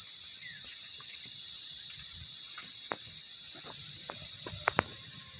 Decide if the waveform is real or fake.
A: real